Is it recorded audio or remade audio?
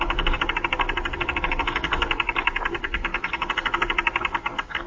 recorded